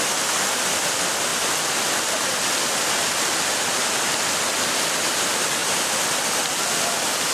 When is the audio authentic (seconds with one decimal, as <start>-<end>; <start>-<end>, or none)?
0.0-7.3